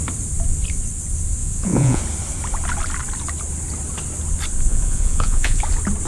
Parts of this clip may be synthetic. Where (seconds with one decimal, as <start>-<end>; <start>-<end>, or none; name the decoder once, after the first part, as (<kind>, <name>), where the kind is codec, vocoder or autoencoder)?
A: 1.4-2.0 (vocoder, Vocos); 4.7-5.6